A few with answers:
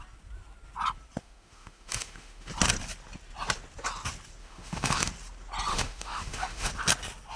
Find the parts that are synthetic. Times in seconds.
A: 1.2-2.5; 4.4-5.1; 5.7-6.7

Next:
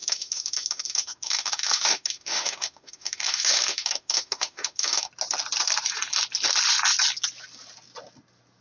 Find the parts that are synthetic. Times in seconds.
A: 0.0-5.1

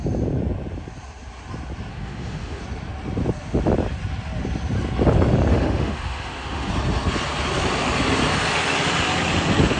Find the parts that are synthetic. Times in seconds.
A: 1.9-2.6; 5.5-6.7

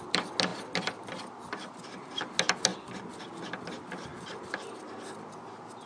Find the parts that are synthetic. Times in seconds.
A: none

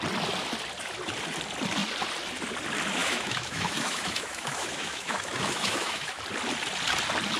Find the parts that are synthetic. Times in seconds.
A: 3.0-6.2

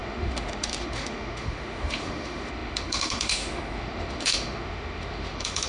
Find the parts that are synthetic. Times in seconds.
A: 0.0-5.7